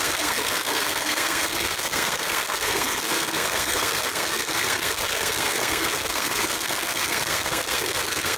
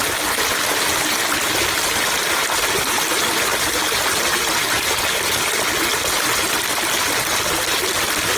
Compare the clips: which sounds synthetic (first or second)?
first